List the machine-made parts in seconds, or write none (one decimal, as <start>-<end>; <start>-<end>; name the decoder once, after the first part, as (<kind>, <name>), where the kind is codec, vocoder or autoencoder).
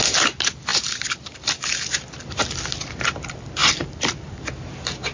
0.7-1.4 (vocoder, BigVGAN v2); 3.6-4.4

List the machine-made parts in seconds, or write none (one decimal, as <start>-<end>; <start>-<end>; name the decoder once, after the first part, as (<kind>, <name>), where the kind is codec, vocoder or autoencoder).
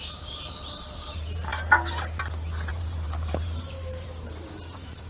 0.0-1.5 (vocoder, BigVGAN v2); 2.7-5.1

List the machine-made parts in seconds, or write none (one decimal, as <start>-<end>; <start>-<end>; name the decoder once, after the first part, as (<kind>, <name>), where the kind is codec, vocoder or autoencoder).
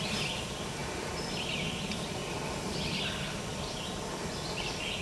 0.8-1.5 (vocoder, BigVGAN v2); 2.2-3.0; 3.5-4.1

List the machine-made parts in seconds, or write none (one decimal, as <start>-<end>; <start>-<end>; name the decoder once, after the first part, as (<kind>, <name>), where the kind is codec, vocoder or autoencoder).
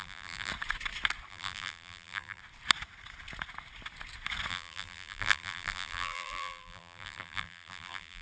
0.0-0.5 (vocoder, BigVGAN v2); 1.3-2.4; 4.5-8.2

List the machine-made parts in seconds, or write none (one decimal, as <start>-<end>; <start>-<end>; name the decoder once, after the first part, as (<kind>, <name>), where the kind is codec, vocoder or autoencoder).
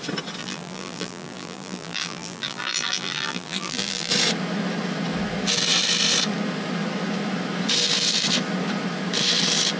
0.4-4.1 (vocoder, BigVGAN v2)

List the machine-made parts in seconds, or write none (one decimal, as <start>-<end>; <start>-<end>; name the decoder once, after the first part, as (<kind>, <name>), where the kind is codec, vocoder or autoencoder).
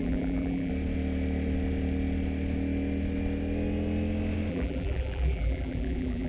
0.0-0.7 (vocoder, BigVGAN v2); 4.5-6.3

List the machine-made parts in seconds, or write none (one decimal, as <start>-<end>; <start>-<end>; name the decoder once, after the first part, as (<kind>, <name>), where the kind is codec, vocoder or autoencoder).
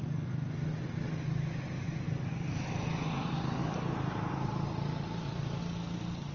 3.6-5.6 (vocoder, BigVGAN v2)